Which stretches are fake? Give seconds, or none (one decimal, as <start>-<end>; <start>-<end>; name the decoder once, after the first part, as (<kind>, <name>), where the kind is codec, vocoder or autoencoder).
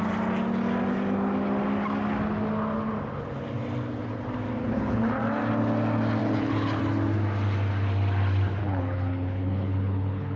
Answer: 4.6-5.2 (codec, HILCodec); 6.2-6.8; 8.6-10.4